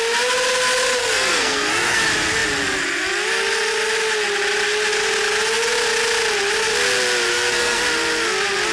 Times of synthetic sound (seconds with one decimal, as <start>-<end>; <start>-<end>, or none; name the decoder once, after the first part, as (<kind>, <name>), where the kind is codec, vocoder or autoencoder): 1.0-2.0 (codec, SNAC); 7.3-7.8